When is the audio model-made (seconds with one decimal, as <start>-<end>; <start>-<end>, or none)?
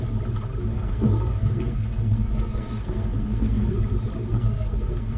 0.7-3.8; 4.2-5.2